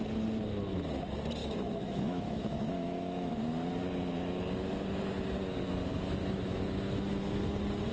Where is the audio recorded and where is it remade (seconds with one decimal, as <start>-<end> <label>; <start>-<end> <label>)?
0.0-1.4 recorded; 1.4-3.4 remade; 3.4-6.2 recorded; 6.2-7.2 remade; 7.2-7.9 recorded